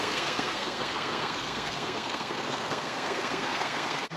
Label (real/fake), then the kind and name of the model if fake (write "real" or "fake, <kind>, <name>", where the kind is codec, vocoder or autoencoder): fake, codec, SNAC